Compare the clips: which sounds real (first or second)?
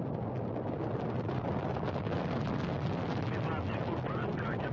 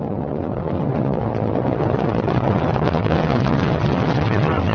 first